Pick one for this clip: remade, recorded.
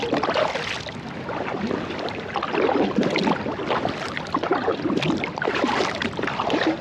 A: recorded